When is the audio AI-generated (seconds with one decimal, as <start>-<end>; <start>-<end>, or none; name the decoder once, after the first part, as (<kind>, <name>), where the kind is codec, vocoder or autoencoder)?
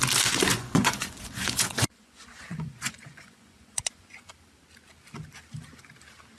0.5-4.3 (vocoder, Vocos)